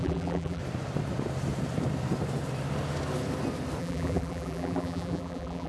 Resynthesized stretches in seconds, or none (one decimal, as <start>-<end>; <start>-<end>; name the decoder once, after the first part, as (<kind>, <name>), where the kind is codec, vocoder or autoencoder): 0.0-0.6 (vocoder, BigVGAN v2); 3.8-5.7